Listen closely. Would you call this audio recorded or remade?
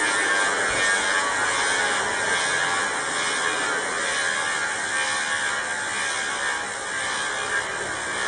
recorded